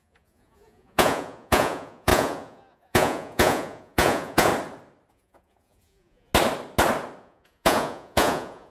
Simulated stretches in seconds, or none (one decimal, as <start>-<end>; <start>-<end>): 0.0-4.5; 5.1-6.3; 7.2-8.7